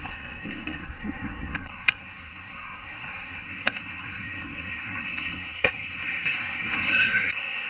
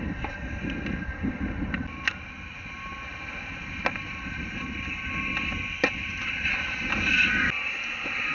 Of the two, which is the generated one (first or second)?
first